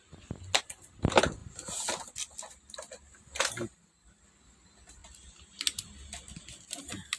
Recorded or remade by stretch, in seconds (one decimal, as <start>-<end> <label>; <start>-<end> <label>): 0.0-7.2 recorded